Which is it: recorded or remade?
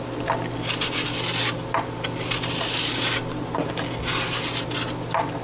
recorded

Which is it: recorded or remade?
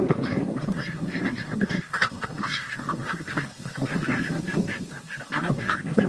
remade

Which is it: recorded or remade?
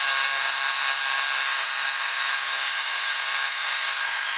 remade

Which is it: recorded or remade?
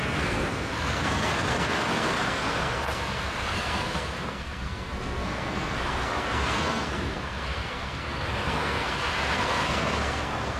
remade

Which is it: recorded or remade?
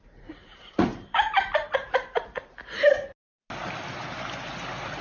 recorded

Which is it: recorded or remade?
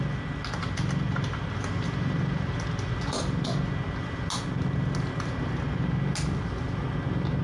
recorded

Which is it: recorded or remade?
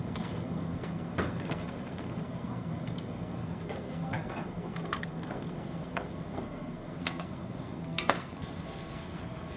remade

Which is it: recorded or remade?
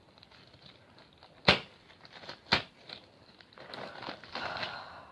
recorded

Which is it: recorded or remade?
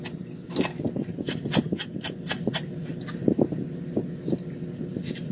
recorded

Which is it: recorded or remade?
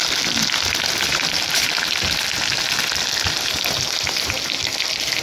recorded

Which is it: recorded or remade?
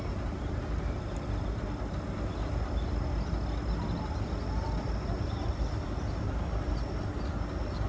recorded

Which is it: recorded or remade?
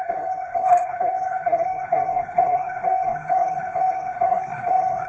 remade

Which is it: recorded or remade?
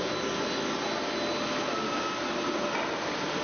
recorded